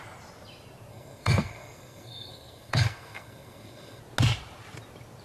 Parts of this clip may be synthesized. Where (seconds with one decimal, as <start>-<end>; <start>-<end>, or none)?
0.9-4.0